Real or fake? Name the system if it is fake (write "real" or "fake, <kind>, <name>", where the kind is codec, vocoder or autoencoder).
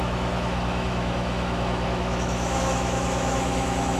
fake, autoencoder, DAC-VAE